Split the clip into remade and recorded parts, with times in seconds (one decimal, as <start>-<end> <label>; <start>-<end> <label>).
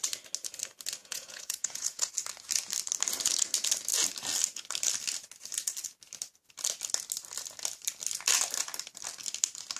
0.0-1.0 recorded; 1.0-2.1 remade; 2.1-9.8 recorded